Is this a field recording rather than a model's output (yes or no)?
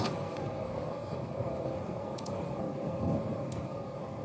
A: no